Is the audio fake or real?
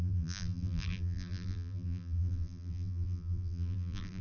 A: fake